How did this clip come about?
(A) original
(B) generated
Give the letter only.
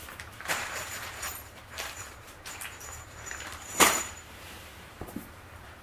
B